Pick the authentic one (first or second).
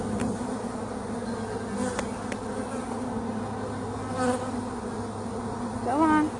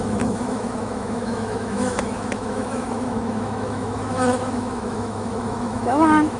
first